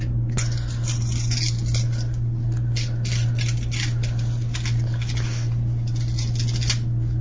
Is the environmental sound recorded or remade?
recorded